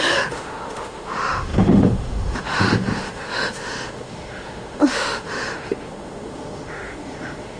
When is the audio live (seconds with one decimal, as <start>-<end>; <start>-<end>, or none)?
none